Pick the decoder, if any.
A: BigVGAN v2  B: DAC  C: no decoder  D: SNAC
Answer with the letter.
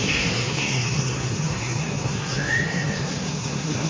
D